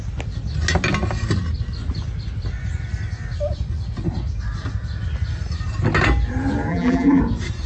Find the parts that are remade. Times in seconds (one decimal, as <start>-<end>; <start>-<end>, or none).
6.7-7.2